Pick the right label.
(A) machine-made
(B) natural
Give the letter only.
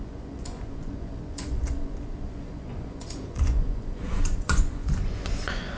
A